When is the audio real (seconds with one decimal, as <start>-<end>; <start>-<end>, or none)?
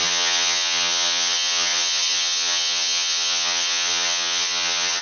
none